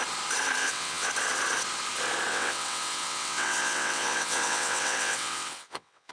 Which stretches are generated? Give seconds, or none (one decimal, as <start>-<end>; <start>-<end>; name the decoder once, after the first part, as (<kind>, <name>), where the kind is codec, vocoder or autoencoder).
0.6-1.1 (vocoder, WaveNeXt); 2.3-6.1